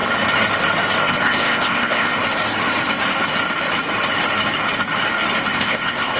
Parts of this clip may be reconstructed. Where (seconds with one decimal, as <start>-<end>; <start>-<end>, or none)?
1.0-2.2; 5.5-6.2